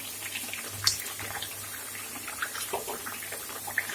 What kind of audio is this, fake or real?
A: real